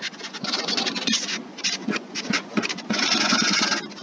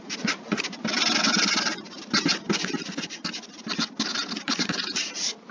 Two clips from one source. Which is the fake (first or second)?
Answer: first